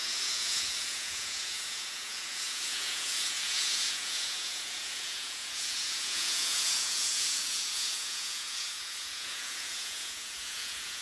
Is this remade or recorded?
remade